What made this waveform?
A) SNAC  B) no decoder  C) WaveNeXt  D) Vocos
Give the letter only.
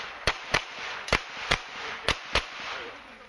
D